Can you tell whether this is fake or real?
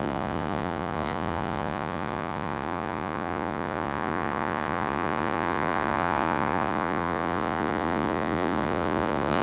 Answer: fake